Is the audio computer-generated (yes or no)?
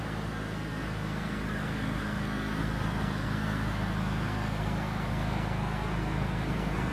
yes